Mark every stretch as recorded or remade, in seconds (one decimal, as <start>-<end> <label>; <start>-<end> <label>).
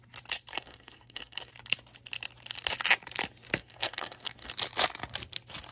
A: 0.0-0.5 recorded; 0.5-1.5 remade; 1.5-3.6 recorded; 3.6-4.5 remade; 4.5-5.7 recorded